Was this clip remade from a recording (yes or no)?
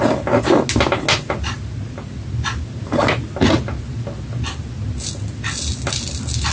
no